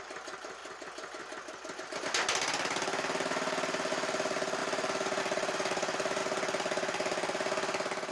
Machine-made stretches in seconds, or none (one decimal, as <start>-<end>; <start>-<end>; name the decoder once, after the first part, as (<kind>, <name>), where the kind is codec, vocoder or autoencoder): 0.0-0.6 (vocoder, BigVGAN v2); 3.9-6.2